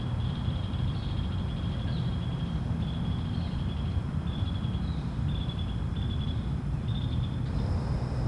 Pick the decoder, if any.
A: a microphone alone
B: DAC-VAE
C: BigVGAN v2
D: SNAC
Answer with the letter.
C